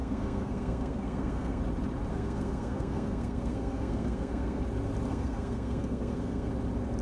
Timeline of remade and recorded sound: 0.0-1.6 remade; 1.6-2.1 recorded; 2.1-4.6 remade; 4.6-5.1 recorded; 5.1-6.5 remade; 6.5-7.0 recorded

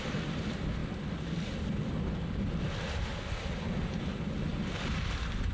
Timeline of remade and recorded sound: 0.0-5.5 recorded

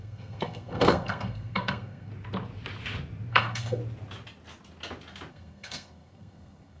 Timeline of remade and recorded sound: 0.0-2.1 remade; 2.1-3.3 recorded; 3.3-3.8 remade; 3.8-5.3 recorded; 5.3-6.8 remade

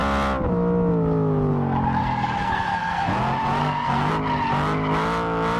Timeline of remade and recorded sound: 0.0-2.0 recorded; 2.0-3.1 remade; 3.1-3.6 recorded; 3.6-4.1 remade; 4.1-5.6 recorded